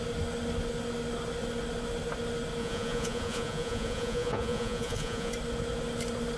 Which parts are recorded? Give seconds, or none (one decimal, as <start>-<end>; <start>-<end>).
0.0-2.6; 5.3-6.4